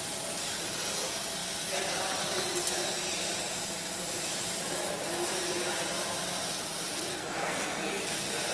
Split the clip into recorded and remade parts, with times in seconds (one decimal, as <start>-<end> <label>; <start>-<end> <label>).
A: 0.0-7.1 recorded; 7.1-8.0 remade; 8.0-8.5 recorded